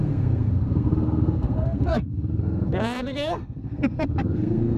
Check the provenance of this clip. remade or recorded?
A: remade